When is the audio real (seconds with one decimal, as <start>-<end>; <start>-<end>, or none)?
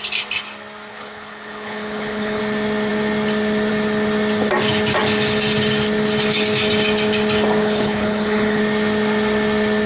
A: 0.0-0.9; 2.4-7.6; 8.6-9.9